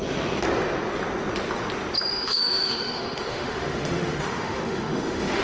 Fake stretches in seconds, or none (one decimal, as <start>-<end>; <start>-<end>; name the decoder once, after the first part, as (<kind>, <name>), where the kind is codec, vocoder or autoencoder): 2.1-5.4 (autoencoder, DAC-VAE)